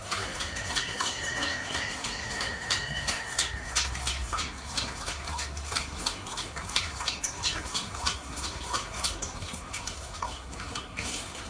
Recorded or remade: remade